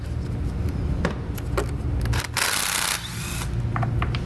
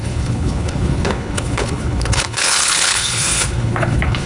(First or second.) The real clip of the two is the first